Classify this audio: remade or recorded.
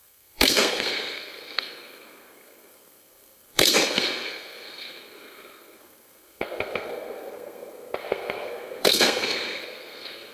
remade